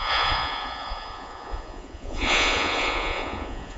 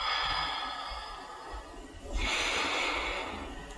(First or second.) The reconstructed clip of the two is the first